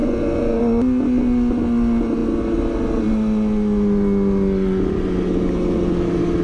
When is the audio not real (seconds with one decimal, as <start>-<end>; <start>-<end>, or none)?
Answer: 0.0-0.6